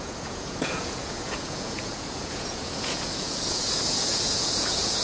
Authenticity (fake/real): fake